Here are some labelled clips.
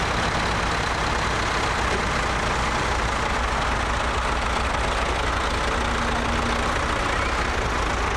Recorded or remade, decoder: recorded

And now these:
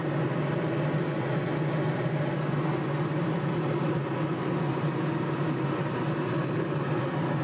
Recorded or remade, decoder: recorded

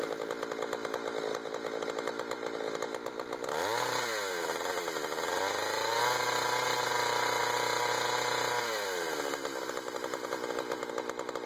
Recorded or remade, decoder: recorded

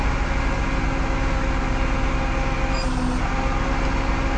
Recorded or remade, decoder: recorded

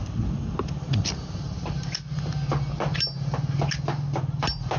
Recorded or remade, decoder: recorded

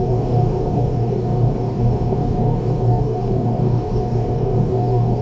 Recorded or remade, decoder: remade, codec, DAC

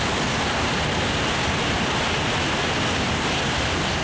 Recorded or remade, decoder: recorded